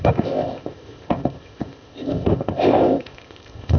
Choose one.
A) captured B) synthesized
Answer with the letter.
B